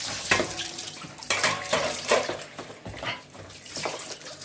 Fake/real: fake